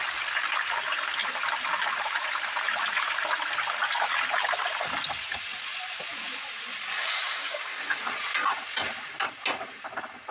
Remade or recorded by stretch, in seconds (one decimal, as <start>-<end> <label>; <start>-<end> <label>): 0.0-7.0 recorded; 7.0-8.0 remade; 8.0-10.3 recorded